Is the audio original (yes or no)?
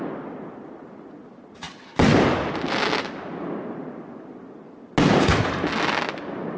yes